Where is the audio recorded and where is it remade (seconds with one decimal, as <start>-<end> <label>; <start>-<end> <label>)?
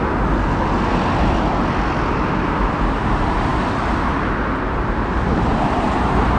0.0-6.4 recorded